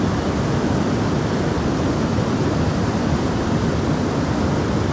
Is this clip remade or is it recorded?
recorded